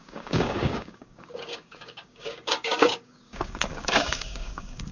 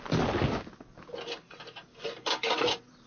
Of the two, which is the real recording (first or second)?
second